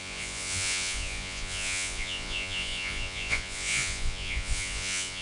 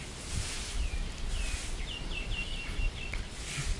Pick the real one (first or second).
second